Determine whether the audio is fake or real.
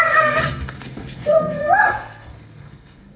fake